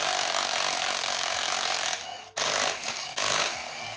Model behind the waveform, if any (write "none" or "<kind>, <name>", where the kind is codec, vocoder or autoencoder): codec, DAC